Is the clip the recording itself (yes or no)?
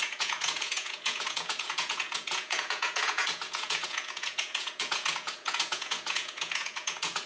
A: no